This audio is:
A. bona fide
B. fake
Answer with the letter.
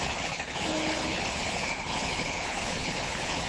B